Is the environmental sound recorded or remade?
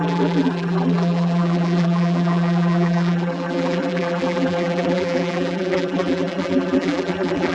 remade